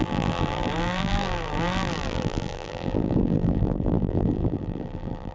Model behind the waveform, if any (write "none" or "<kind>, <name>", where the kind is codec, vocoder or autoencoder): vocoder, BigVGAN v2